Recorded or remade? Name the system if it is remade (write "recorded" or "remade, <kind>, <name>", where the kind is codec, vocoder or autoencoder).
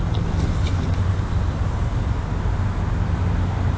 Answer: recorded